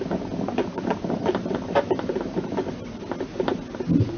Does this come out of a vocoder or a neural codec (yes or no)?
no